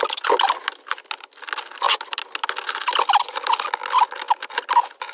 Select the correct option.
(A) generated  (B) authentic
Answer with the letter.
B